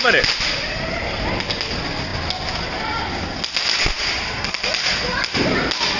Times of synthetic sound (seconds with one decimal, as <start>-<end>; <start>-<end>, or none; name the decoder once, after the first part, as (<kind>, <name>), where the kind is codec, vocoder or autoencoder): none